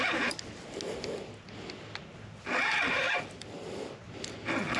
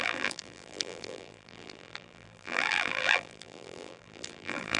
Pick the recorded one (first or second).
first